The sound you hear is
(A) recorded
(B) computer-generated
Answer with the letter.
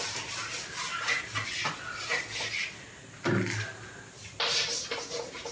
A